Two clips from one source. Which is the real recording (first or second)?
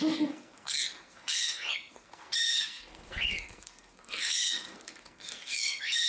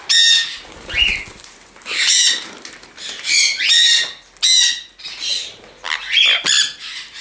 second